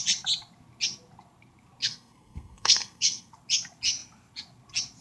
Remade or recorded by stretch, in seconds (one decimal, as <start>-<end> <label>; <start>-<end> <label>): 0.0-1.8 recorded; 1.8-3.3 remade; 3.3-5.0 recorded